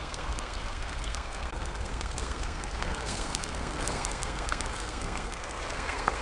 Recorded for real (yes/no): no